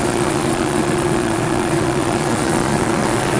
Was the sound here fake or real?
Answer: fake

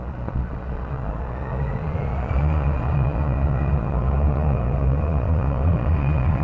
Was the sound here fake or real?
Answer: fake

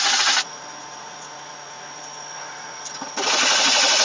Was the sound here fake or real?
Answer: fake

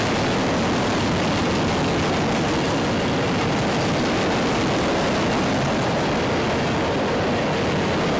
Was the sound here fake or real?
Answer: real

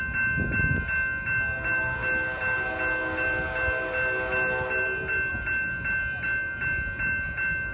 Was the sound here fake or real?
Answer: real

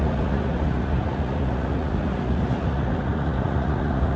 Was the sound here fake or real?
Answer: fake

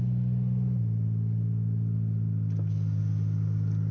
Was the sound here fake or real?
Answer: real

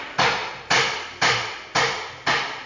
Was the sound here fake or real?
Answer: real